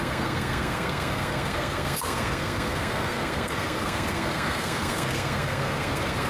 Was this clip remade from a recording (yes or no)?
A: yes